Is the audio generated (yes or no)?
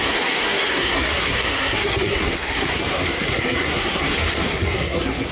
yes